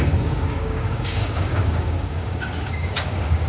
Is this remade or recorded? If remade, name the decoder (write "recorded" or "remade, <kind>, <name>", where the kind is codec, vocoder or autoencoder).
remade, codec, DAC